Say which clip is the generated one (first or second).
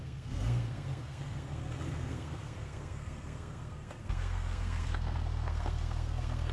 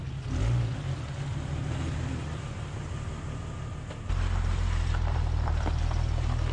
first